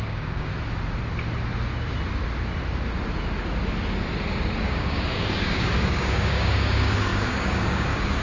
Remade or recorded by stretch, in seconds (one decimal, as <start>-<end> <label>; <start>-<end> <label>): 0.0-0.5 remade; 0.5-4.6 recorded; 4.6-8.2 remade